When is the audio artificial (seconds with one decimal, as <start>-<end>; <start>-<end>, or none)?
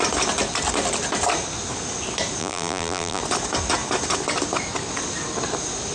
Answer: 2.4-3.2